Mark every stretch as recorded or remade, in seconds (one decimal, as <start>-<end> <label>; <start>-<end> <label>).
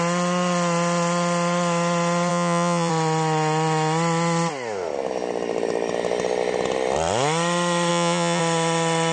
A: 0.0-2.3 recorded; 2.3-2.9 remade; 2.9-7.9 recorded; 7.9-8.4 remade; 8.4-9.1 recorded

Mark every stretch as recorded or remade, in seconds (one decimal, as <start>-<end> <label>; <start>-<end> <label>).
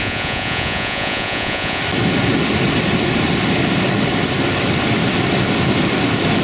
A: 0.0-1.8 remade; 1.8-6.4 recorded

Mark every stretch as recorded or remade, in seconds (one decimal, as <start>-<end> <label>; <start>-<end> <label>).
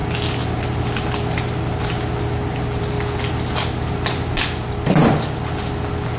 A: 0.0-6.2 recorded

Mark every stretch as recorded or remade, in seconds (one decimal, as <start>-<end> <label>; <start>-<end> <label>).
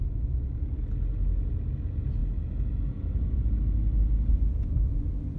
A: 0.0-5.4 recorded